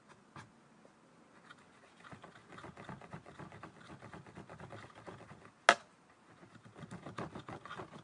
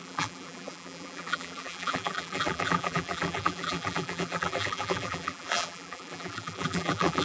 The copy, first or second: second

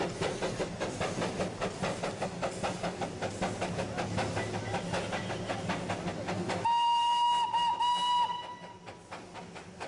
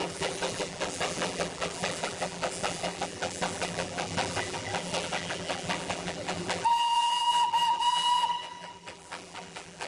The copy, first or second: second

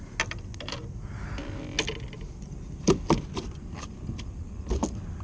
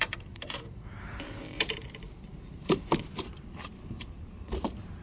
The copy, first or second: second